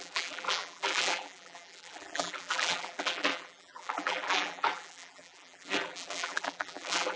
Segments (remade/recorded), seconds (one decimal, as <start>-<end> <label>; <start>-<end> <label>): 0.0-7.2 remade